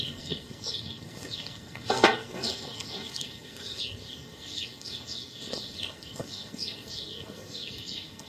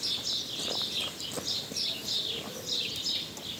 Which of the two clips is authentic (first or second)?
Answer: second